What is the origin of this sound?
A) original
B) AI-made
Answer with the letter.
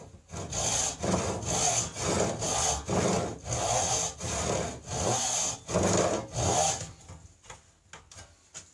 A